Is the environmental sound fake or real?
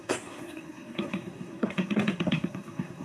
fake